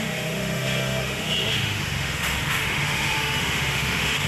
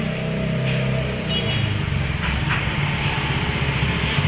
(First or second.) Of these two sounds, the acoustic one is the second